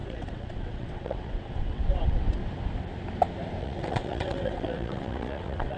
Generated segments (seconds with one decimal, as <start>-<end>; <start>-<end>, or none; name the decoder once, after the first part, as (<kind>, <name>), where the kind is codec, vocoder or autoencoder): 0.0-2.4 (vocoder, WaveNeXt); 3.6-5.8